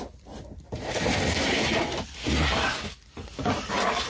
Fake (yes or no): no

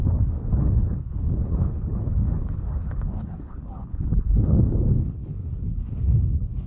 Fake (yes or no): yes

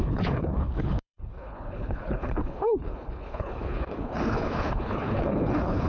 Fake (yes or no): yes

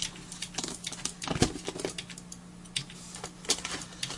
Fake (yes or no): no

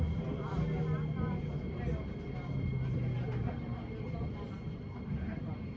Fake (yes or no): no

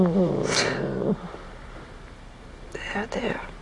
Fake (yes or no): no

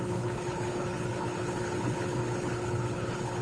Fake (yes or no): yes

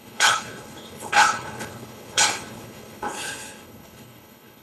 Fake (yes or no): yes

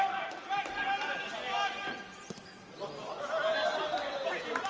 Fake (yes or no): no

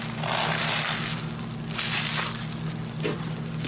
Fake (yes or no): no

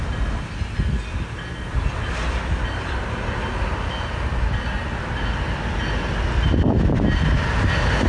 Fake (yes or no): no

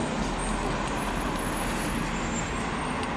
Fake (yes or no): no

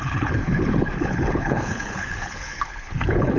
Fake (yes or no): yes